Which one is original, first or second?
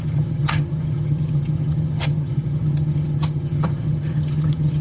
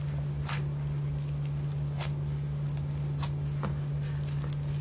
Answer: second